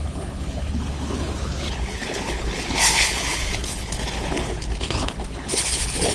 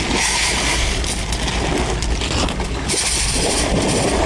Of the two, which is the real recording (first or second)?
second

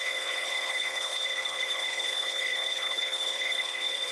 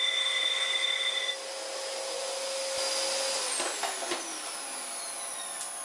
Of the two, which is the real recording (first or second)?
second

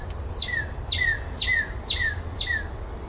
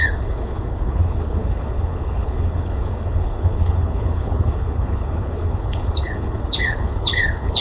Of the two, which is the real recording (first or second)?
first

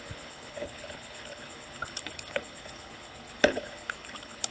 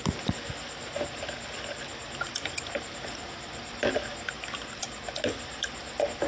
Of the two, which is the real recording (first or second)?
second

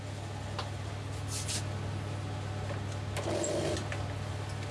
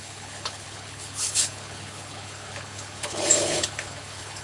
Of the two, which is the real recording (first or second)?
first